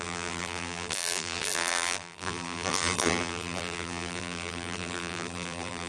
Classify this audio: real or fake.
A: fake